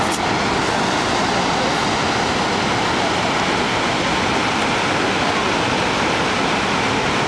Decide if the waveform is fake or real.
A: real